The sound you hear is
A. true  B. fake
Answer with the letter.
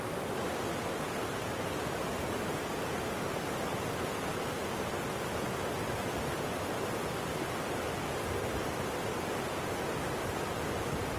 A